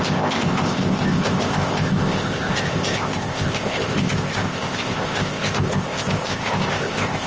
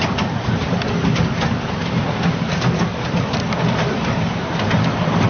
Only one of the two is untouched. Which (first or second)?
second